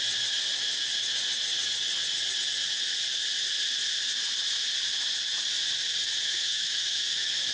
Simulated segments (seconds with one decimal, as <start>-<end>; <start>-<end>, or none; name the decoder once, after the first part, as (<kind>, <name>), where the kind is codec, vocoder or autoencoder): 6.3-7.5 (autoencoder, DAC-VAE)

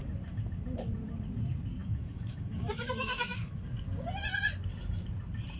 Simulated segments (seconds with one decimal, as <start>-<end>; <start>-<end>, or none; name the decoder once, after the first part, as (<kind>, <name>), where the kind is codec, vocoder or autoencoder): 1.8-3.6 (autoencoder, DAC-VAE)

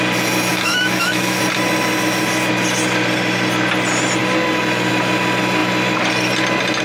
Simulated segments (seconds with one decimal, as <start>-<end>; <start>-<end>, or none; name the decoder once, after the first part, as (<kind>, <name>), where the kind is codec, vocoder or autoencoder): 0.5-1.4 (autoencoder, DAC-VAE)

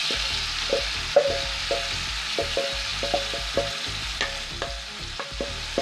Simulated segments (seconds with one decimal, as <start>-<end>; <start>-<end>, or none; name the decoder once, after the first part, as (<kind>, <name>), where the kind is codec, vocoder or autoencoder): none